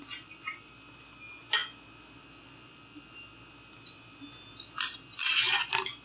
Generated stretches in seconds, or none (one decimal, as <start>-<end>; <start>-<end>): none